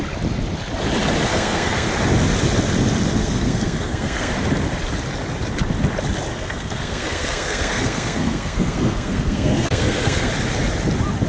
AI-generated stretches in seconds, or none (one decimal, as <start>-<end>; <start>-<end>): 1.3-1.9; 3.2-4.3; 6.3-10.3